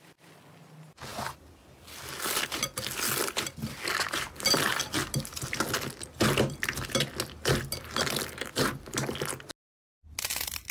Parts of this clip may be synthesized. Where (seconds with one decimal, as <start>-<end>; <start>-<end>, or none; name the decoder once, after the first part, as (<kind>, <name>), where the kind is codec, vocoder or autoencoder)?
none